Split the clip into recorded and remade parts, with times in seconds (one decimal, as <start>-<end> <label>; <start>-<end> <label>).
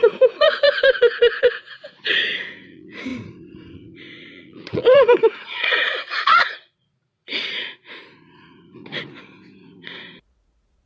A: 0.0-10.9 remade